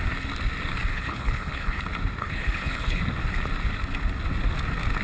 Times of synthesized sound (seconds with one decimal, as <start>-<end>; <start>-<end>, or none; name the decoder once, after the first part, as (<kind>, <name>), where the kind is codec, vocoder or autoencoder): 0.9-1.8 (codec, HILCodec); 2.2-3.0